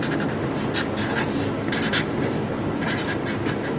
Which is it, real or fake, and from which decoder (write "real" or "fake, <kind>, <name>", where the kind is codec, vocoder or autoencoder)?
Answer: real